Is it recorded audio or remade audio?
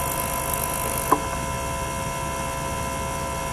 recorded